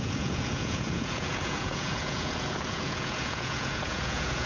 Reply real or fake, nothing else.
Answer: fake